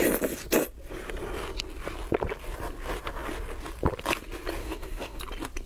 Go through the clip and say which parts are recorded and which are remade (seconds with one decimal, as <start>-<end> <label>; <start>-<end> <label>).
0.0-4.6 recorded; 4.6-5.2 remade; 5.2-5.7 recorded